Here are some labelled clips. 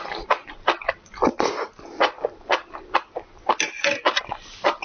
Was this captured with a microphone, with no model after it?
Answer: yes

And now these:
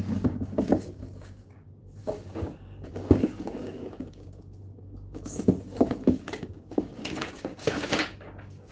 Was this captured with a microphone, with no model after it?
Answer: no